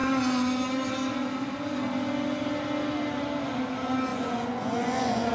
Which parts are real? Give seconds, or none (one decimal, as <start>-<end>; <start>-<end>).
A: 0.0-4.1